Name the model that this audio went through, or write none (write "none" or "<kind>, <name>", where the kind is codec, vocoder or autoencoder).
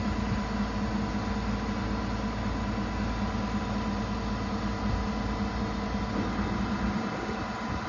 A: none